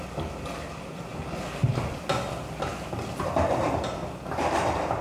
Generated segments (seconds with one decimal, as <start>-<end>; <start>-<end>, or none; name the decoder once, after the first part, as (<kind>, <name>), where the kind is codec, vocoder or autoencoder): none